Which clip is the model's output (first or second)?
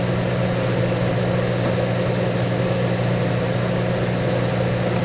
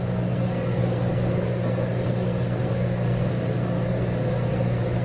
second